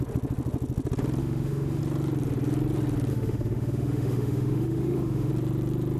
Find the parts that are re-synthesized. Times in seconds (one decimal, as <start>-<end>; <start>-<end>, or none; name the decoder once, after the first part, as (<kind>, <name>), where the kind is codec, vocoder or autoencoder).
1.2-1.8 (autoencoder, DAC-VAE); 3.1-5.3